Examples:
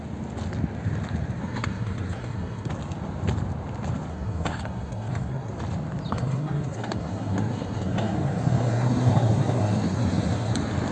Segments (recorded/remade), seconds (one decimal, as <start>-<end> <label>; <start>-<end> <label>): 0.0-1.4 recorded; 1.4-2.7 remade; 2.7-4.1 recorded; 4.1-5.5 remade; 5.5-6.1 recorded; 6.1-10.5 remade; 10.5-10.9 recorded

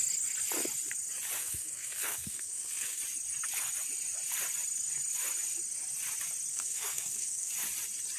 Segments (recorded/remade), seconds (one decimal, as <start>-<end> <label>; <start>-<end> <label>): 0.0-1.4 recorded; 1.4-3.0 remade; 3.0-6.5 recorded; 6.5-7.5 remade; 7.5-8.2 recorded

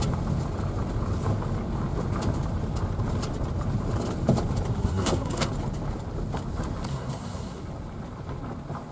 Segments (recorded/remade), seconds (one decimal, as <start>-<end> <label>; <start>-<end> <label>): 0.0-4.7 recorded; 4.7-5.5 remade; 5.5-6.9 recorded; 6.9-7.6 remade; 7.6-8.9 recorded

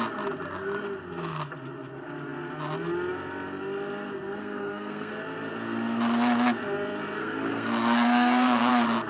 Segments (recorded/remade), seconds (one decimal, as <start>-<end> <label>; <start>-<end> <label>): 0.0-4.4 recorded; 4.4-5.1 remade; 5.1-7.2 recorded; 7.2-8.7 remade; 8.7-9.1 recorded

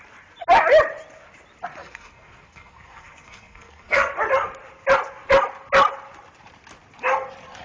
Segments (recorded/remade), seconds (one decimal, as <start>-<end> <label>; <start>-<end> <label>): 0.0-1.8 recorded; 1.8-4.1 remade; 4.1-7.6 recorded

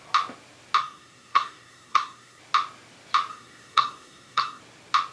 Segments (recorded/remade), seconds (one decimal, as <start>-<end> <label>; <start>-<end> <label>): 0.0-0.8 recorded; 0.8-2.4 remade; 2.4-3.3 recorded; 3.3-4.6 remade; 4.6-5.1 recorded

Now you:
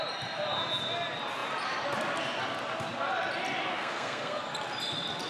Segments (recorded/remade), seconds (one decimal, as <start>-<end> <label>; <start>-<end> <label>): 0.0-3.7 recorded; 3.7-4.4 remade; 4.4-5.3 recorded

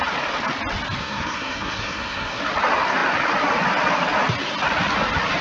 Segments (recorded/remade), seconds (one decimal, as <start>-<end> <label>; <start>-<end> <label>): 0.0-1.0 recorded; 1.0-2.4 remade; 2.4-5.4 recorded